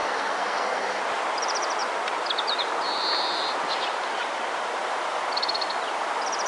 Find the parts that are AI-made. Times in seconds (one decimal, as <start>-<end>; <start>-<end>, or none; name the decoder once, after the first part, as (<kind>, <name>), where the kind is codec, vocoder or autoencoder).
0.0-1.0 (codec, SNAC)